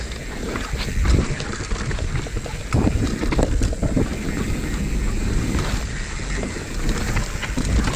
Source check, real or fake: real